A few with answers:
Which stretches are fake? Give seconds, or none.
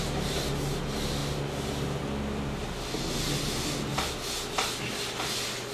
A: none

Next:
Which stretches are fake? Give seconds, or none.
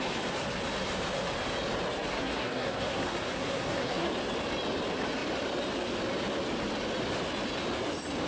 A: 2.1-4.1 (codec, SNAC)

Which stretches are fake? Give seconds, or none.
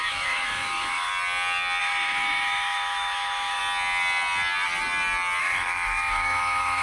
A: 0.0-1.1 (autoencoder, DAC-VAE); 1.8-3.6; 5.4-6.8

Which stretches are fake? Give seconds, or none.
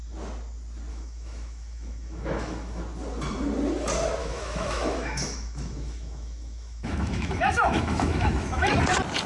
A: 0.9-2.8 (autoencoder, DAC-VAE); 4.2-8.7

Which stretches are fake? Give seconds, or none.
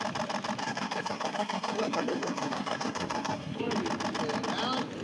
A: 0.6-3.6 (codec, SNAC)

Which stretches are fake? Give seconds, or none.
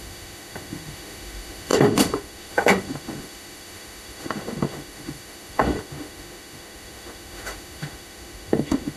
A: 0.0-9.0 (autoencoder, DAC-VAE)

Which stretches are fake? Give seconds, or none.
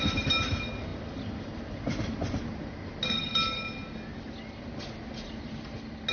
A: none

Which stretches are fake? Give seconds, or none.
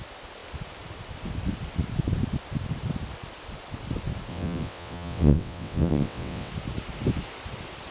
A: 4.3-6.5 (vocoder, WaveNeXt)